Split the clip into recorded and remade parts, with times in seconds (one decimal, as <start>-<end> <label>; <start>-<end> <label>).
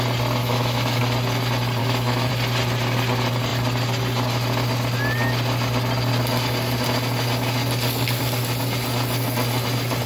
0.0-0.4 recorded; 0.4-1.0 remade; 1.0-1.8 recorded; 1.8-2.3 remade; 2.3-10.1 recorded